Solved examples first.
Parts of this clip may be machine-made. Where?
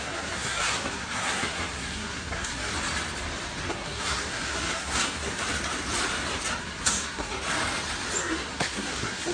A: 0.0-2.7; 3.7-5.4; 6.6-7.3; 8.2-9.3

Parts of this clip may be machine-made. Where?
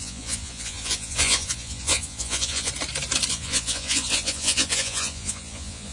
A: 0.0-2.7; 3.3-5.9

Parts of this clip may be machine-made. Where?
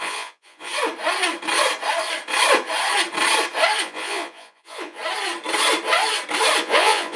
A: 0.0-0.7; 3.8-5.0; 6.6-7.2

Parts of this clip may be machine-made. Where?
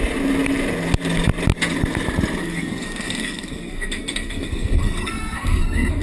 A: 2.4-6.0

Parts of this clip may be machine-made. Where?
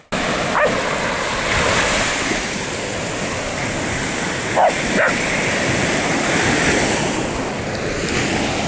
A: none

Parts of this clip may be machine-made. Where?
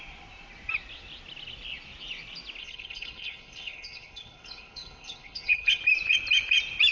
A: 2.6-5.8